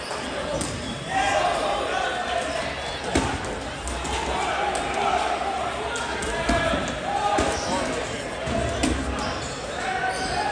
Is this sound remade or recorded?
recorded